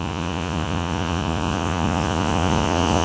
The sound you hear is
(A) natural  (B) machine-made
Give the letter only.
B